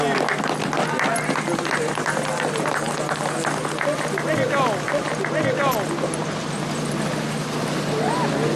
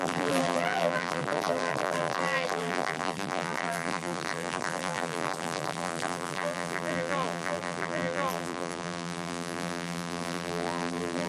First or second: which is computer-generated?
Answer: second